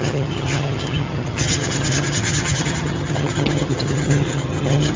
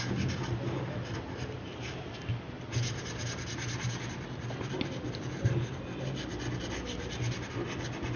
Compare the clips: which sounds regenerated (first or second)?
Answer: first